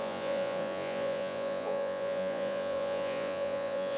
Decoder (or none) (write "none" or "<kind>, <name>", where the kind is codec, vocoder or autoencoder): vocoder, Vocos